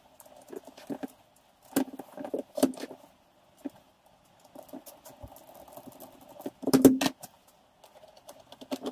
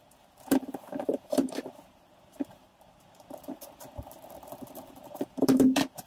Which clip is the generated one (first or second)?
second